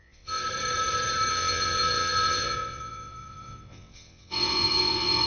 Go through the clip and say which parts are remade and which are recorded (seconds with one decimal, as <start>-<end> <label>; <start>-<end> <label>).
0.0-0.4 remade; 0.4-1.3 recorded; 1.3-5.3 remade